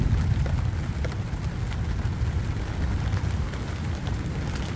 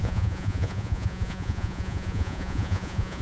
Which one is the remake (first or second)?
second